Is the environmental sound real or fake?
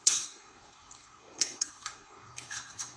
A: fake